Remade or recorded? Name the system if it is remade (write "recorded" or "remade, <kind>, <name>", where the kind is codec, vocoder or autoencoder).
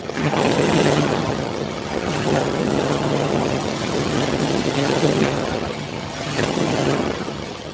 remade, vocoder, HiFi-GAN